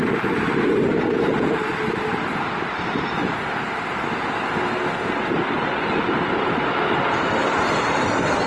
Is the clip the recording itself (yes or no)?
yes